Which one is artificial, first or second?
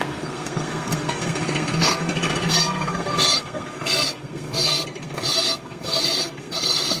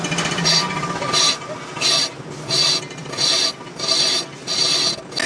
first